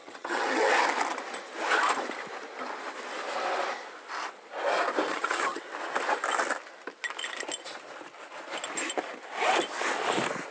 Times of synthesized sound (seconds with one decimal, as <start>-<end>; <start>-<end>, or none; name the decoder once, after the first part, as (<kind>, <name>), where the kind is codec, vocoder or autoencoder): 0.0-0.7 (vocoder, HiFi-GAN); 5.1-5.6

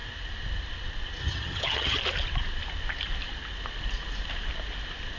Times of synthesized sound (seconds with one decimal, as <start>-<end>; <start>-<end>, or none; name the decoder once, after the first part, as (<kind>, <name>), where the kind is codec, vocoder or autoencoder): 1.2-2.0 (vocoder, HiFi-GAN)

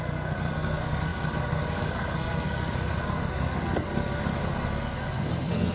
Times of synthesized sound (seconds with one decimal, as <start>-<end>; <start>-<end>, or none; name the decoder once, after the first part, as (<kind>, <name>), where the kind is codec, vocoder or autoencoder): 0.0-5.7 (codec, SNAC)

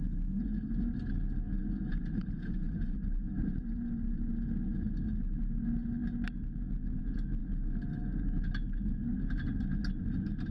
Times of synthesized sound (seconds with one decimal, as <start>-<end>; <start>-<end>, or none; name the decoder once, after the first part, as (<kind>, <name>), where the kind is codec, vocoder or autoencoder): 1.9-4.3 (vocoder, BigVGAN v2)

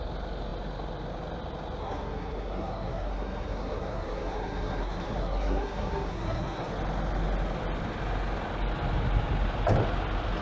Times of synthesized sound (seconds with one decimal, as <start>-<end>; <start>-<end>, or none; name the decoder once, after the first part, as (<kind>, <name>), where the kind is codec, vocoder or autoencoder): 1.8-6.7 (codec, SNAC)